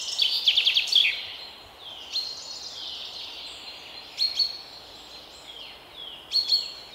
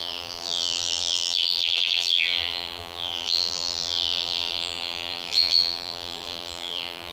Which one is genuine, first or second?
first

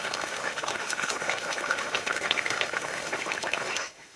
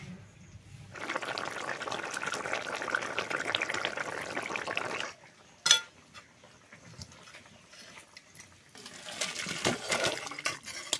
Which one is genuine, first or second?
second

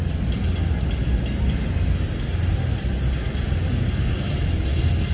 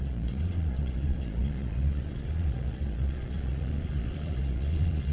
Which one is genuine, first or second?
first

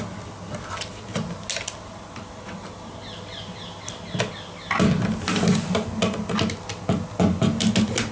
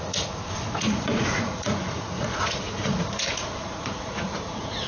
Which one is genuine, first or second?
first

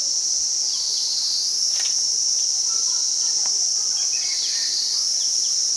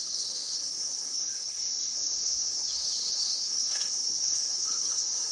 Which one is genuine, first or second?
first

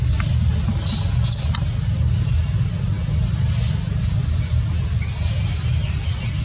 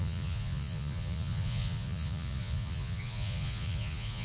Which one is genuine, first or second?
first